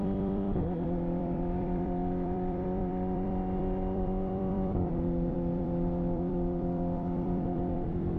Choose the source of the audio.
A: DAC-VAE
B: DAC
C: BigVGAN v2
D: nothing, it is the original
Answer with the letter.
C